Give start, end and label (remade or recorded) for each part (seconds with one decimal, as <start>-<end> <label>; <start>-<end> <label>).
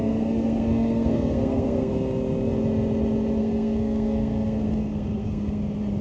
0.0-1.9 remade; 1.9-3.4 recorded; 3.4-5.6 remade; 5.6-6.0 recorded